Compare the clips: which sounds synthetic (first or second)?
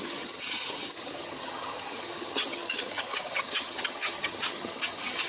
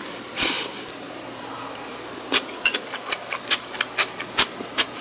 first